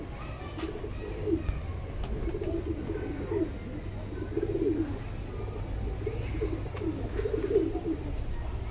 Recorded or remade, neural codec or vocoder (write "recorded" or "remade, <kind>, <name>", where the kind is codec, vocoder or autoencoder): recorded